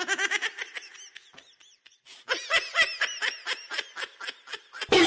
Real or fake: real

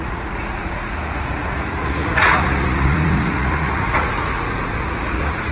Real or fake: fake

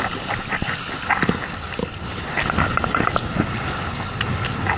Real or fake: real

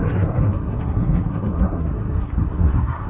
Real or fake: fake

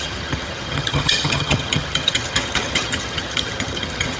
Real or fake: fake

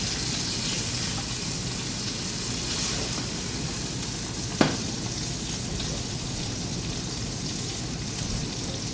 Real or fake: real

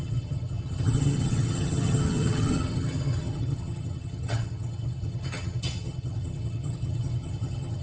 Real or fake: fake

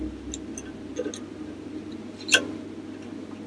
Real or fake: real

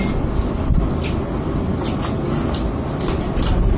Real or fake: real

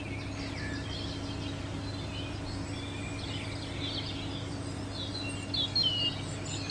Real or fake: real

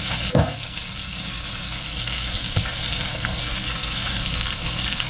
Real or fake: fake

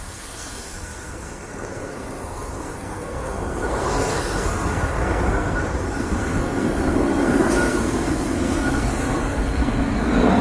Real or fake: fake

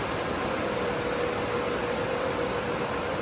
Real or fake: real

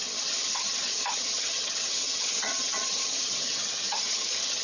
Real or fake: fake